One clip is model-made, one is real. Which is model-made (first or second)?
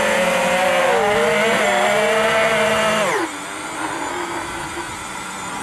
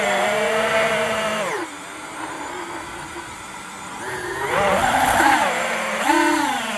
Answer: second